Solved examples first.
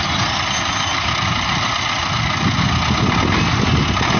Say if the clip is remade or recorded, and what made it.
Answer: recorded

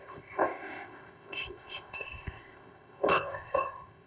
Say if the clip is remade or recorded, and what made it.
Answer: remade, codec, ZipCodec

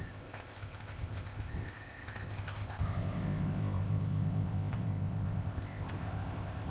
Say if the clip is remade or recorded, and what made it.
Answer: remade, codec, ZipCodec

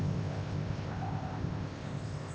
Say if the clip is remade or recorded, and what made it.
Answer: remade, codec, ZipCodec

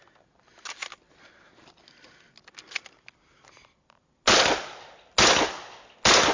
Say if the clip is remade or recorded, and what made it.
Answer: recorded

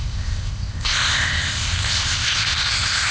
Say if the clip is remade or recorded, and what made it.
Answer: remade, codec, ZipCodec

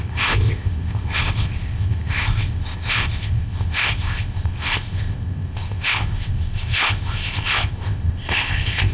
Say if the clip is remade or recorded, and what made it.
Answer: remade, codec, ZipCodec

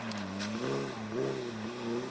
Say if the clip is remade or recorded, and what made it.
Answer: recorded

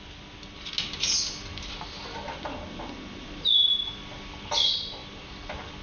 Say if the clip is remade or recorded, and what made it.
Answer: recorded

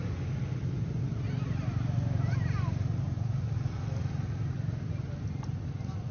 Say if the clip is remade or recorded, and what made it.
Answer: recorded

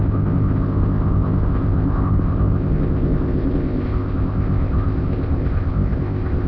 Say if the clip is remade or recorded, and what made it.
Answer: remade, codec, ZipCodec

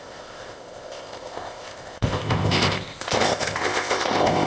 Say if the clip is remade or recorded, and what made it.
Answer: remade, codec, ZipCodec